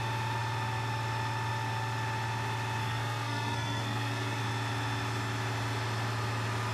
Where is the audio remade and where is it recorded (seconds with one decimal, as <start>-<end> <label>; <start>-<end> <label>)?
0.0-2.8 recorded; 2.8-4.4 remade; 4.4-6.7 recorded